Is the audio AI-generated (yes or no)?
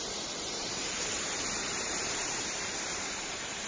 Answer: yes